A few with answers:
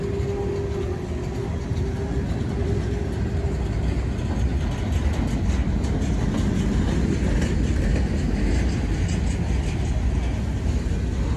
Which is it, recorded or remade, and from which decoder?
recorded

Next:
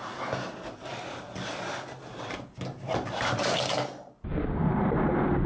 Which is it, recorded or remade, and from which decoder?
recorded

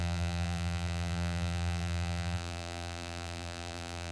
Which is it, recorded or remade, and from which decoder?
remade, vocoder, BigVGAN v2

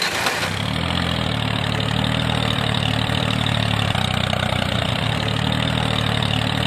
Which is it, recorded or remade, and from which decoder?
remade, vocoder, BigVGAN v2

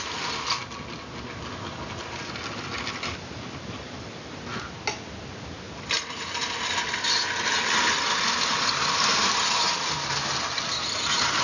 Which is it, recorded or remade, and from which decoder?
recorded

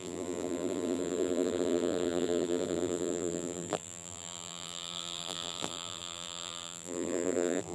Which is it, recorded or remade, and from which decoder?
remade, vocoder, BigVGAN v2